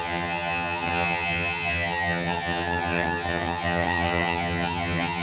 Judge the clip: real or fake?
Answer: fake